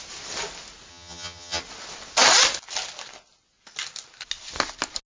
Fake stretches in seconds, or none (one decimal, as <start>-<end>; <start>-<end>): 0.9-1.6